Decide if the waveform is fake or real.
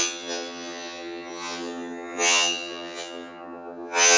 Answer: fake